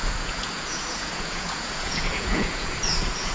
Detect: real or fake fake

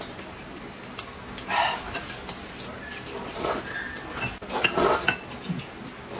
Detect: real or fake real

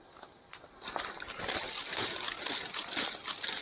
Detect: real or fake real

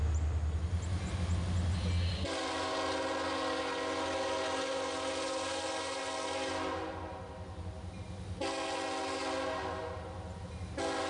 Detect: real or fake real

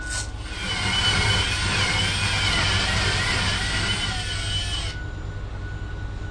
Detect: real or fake real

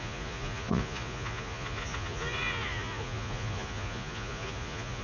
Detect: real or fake fake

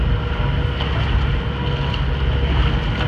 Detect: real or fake real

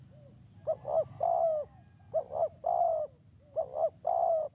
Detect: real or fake real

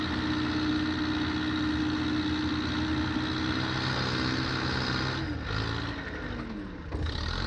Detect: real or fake real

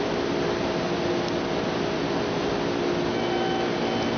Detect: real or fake real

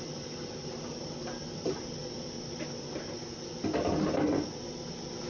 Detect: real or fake real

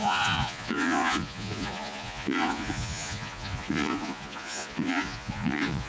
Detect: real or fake fake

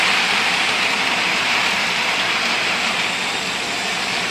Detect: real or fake real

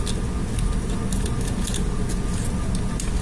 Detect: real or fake real